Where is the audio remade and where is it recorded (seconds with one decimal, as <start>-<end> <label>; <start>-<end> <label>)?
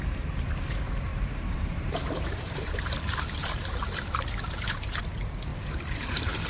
0.0-1.1 recorded; 1.1-5.0 remade; 5.0-5.5 recorded; 5.5-6.5 remade